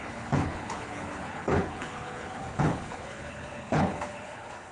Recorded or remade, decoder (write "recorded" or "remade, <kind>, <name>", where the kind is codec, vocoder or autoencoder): remade, codec, HILCodec